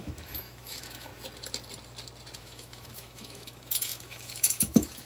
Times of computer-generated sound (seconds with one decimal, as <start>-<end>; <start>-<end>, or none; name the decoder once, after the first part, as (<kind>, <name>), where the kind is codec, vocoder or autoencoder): 0.0-1.1 (autoencoder, DAC-VAE); 2.4-5.1